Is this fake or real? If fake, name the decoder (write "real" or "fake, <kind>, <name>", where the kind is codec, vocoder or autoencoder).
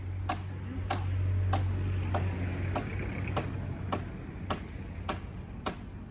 real